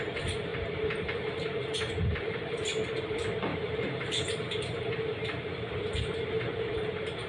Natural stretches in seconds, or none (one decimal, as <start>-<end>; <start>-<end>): 0.0-3.5